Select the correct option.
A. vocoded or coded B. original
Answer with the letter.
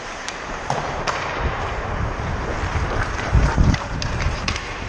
A